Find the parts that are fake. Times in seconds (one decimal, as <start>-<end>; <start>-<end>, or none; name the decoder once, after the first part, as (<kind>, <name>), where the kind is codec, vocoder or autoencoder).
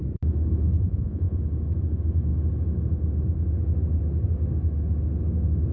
0.8-1.4 (vocoder, Vocos)